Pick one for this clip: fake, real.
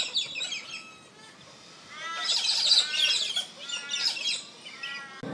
real